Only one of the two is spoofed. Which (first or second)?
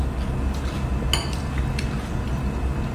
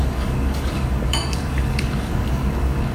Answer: second